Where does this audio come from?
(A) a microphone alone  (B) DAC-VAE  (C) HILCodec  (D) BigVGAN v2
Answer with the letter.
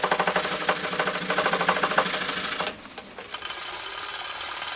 A